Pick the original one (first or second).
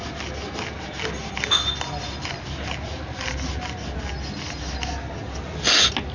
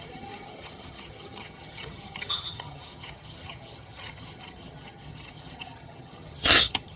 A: first